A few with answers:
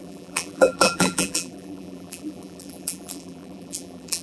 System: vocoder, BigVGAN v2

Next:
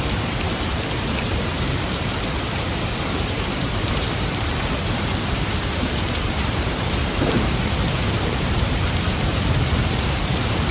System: vocoder, BigVGAN v2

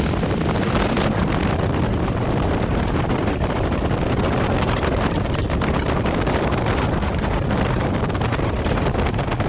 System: vocoder, BigVGAN v2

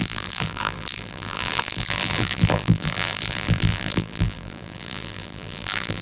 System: vocoder, BigVGAN v2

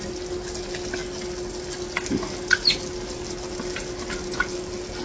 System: none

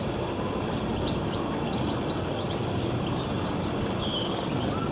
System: none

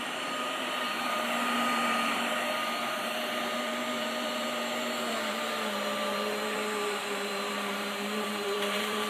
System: vocoder, BigVGAN v2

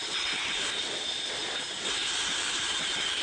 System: none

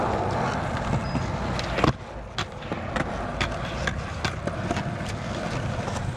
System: none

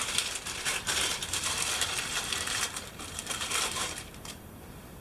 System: vocoder, BigVGAN v2